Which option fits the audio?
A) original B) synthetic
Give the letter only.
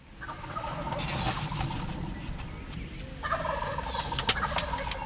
A